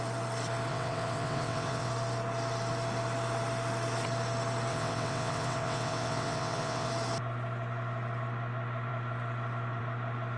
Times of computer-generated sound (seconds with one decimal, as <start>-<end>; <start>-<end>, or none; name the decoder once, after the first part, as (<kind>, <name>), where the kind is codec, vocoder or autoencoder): 0.7-1.9 (vocoder, WaveNeXt); 4.7-6.9